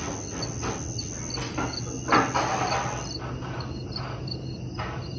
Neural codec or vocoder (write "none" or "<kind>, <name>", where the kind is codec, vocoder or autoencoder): none